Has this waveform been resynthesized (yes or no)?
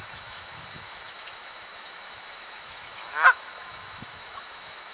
yes